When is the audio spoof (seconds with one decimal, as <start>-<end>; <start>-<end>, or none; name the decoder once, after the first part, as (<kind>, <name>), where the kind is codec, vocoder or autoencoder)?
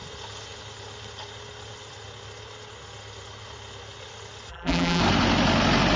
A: 4.5-5.0 (vocoder, BigVGAN v2)